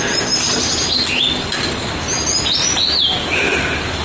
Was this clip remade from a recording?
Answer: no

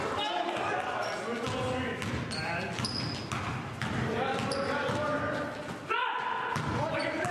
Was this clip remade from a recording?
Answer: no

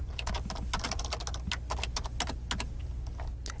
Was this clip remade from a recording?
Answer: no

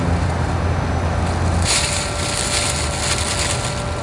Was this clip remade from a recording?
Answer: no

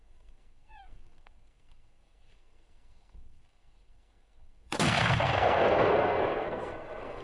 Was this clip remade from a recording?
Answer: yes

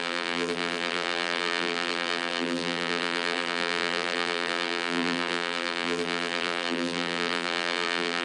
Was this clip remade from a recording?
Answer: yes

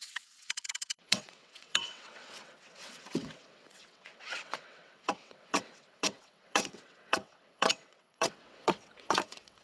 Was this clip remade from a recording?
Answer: yes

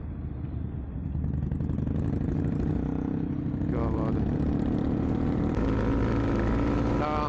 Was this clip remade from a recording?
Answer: no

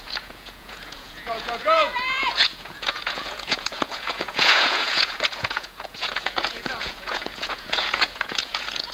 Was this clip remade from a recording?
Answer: yes